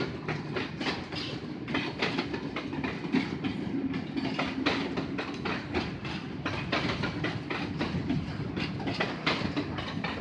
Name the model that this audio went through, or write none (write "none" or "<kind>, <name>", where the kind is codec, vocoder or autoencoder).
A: none